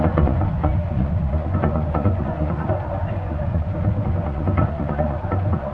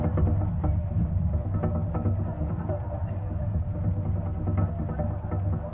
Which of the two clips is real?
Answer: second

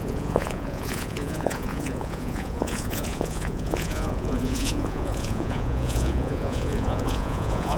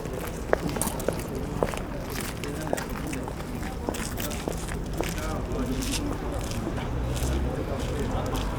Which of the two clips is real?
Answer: second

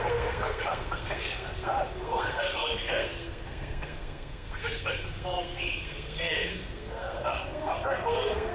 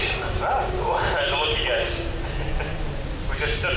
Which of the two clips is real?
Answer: second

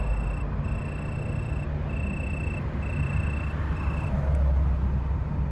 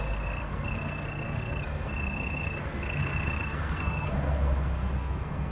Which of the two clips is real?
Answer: first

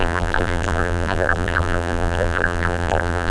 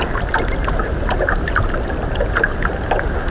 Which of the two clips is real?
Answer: second